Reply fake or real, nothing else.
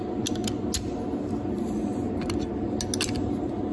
real